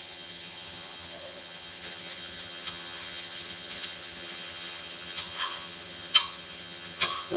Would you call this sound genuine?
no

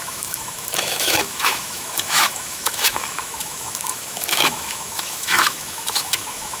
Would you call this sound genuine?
no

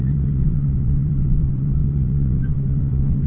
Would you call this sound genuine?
no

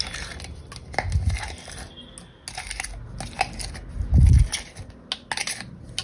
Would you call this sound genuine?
yes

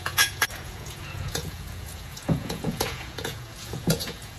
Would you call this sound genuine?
no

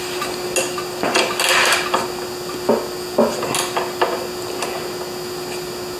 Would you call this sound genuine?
yes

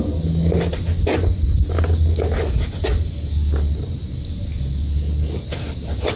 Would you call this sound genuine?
yes